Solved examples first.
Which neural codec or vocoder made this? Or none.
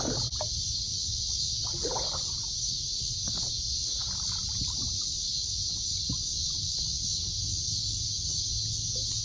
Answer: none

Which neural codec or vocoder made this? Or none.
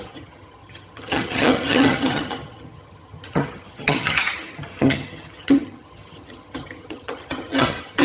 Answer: vocoder, HiFi-GAN